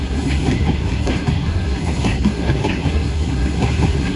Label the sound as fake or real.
fake